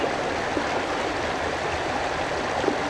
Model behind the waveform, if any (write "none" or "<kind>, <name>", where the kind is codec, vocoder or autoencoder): none